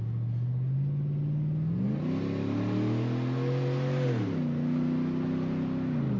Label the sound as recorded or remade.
recorded